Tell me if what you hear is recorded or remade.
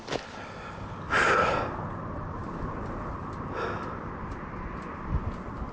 recorded